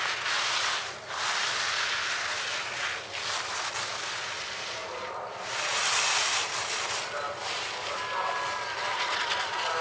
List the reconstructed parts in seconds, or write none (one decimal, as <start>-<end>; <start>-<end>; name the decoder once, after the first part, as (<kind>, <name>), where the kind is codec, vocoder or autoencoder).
none